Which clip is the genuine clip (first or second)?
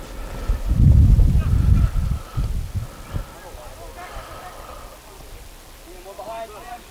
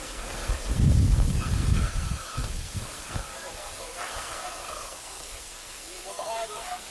first